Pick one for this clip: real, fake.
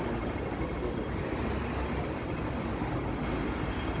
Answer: real